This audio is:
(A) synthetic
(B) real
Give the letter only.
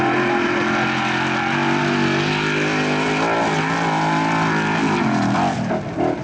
B